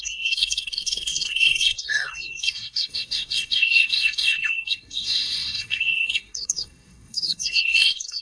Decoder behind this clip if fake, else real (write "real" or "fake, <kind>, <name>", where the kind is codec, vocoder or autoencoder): fake, codec, SNAC